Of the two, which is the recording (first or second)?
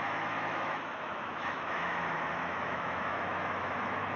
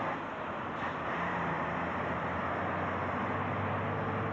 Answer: second